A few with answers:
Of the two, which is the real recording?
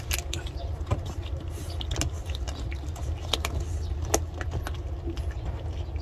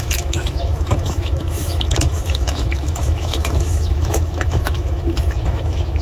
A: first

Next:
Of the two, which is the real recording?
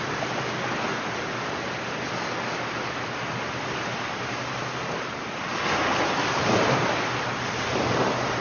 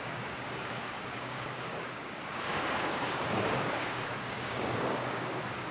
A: first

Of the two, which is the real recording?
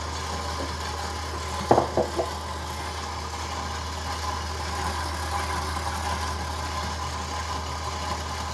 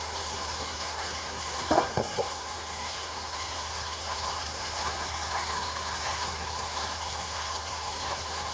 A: first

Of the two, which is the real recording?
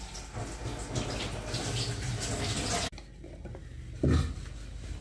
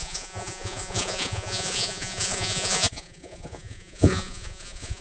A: first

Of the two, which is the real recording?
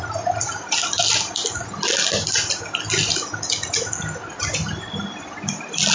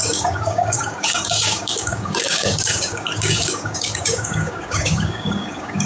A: first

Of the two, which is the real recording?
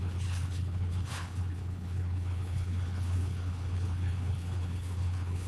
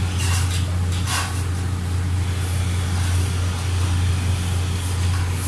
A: second